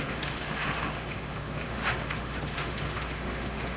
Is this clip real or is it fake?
fake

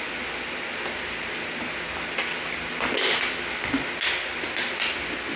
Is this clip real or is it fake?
real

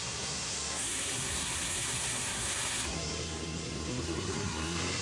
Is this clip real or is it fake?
fake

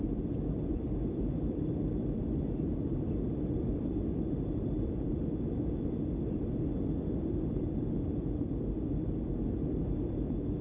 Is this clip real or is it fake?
fake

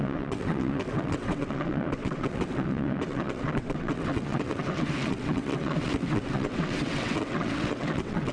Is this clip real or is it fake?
fake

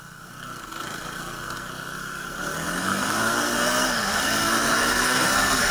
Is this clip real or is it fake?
fake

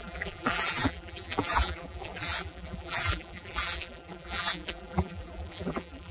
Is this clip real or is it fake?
fake